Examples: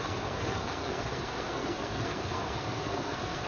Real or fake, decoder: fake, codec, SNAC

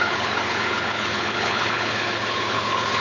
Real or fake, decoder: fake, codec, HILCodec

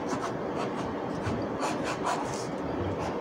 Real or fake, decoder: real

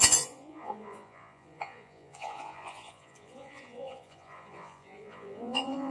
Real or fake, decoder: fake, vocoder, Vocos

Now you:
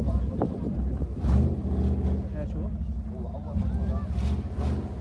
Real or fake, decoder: real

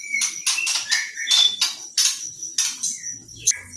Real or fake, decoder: real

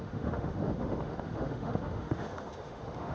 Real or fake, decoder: fake, autoencoder, DAC-VAE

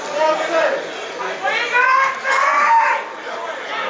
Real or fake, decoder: real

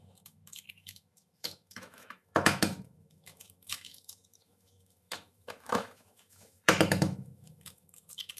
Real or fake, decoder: fake, autoencoder, DAC-VAE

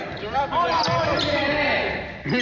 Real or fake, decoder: real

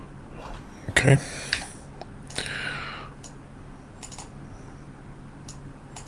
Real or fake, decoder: real